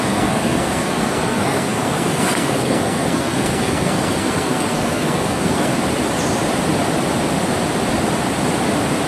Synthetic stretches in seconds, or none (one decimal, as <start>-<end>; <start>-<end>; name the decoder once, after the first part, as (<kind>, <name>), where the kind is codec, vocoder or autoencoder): 0.0-5.7 (codec, SNAC)

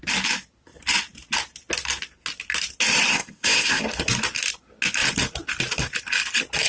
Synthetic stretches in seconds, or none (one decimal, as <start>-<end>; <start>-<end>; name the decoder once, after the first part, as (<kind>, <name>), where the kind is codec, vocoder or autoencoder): 3.1-3.8 (codec, ZipCodec)

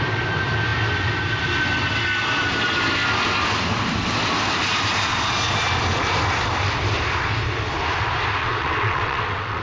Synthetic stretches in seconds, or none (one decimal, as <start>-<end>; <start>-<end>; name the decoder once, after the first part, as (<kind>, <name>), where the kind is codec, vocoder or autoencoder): 8.4-9.6 (vocoder, WaveNeXt)

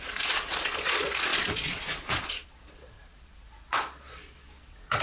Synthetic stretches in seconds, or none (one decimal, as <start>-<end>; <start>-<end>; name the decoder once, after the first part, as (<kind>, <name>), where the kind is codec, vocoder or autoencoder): 0.0-5.0 (vocoder, Vocos)

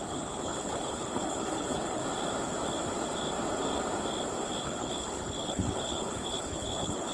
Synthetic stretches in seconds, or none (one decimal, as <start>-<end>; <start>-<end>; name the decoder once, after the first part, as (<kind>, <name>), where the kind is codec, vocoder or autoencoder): 0.0-2.0 (codec, HILCodec); 4.6-7.1

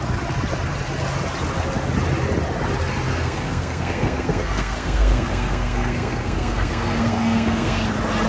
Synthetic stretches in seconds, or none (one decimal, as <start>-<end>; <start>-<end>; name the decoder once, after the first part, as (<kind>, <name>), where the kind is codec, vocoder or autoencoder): 3.1-7.9 (codec, SNAC)